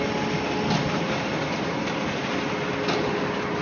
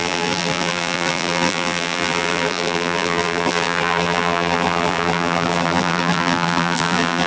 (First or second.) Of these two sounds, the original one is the first